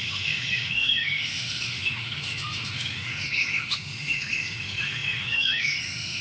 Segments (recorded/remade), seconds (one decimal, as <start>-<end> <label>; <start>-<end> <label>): 0.0-6.2 remade